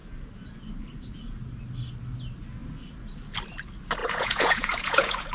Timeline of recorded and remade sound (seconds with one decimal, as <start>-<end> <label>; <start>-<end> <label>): 0.0-4.0 recorded; 4.0-5.3 remade